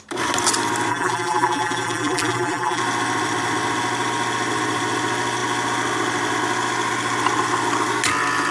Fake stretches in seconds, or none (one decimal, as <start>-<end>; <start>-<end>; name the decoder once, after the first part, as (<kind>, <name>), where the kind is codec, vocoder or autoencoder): 0.9-2.8 (vocoder, BigVGAN v2)